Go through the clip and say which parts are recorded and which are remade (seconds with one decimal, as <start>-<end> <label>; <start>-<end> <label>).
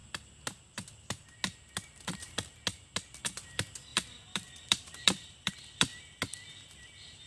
0.0-3.2 recorded; 3.2-5.9 remade; 5.9-7.3 recorded